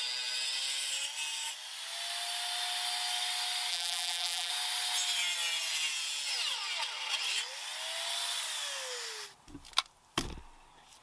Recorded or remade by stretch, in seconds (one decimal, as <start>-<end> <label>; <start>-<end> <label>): 0.0-3.7 recorded; 3.7-4.5 remade; 4.5-11.0 recorded